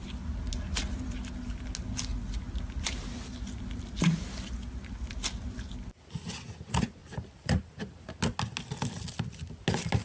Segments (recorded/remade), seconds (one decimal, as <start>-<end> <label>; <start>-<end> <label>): 0.0-7.0 recorded; 7.0-7.6 remade; 7.6-10.0 recorded